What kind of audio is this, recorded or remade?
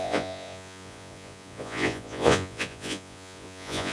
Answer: remade